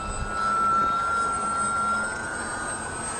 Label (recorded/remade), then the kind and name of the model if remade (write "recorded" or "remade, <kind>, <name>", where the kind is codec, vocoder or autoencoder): recorded